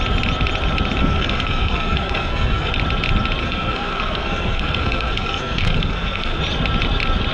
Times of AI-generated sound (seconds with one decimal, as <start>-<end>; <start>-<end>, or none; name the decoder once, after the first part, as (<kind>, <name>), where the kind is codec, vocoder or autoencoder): 1.0-2.7 (codec, SNAC); 3.4-6.4